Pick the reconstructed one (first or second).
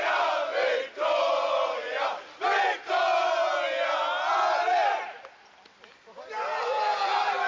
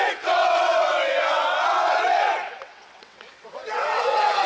second